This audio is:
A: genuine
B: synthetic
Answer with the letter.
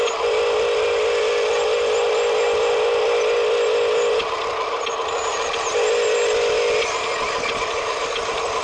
A